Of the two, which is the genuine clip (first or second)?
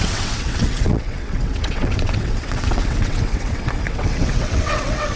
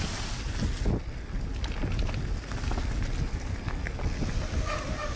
second